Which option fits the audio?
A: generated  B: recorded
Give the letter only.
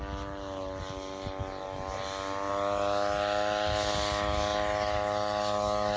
B